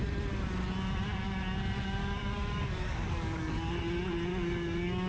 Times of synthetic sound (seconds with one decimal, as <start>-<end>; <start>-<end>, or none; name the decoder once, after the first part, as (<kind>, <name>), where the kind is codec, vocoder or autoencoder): 2.0-3.7 (codec, DAC); 4.3-5.1